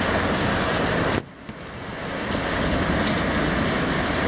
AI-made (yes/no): no